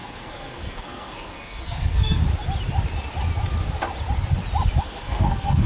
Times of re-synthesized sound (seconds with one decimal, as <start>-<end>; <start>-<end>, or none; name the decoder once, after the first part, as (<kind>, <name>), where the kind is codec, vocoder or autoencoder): 0.0-2.2 (codec, SNAC); 4.8-5.7